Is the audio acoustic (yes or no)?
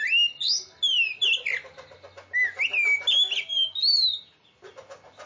yes